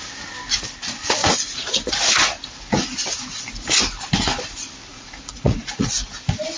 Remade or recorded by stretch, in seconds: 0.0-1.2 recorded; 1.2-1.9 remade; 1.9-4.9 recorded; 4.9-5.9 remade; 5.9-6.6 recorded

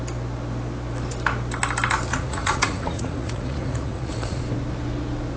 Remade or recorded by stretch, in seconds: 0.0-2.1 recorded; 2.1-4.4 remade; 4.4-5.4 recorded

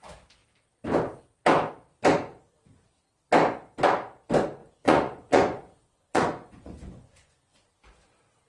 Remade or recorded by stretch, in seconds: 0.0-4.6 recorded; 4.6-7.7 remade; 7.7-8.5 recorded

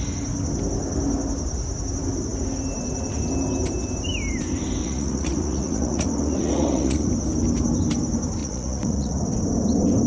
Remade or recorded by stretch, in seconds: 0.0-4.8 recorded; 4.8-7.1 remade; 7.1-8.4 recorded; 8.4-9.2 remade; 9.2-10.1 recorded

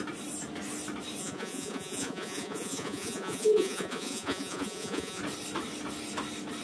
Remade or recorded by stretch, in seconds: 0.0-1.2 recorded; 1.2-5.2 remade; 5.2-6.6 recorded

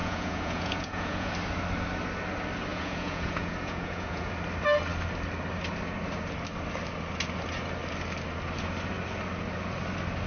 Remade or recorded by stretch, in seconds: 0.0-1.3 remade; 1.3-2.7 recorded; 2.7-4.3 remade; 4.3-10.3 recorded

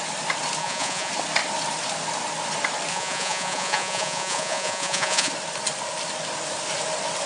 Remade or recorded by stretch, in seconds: 0.0-0.6 recorded; 0.6-1.1 remade; 1.1-2.9 recorded; 2.9-5.3 remade; 5.3-7.3 recorded

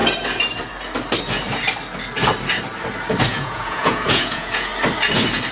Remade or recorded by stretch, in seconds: 0.0-3.3 recorded; 3.3-4.7 remade; 4.7-5.5 recorded